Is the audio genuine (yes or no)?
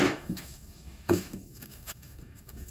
no